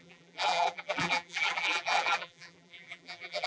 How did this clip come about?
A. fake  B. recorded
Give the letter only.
A